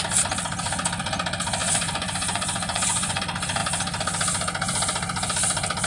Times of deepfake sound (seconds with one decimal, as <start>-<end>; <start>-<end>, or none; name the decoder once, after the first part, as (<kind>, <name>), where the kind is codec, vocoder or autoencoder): 1.6-3.2 (vocoder, Vocos)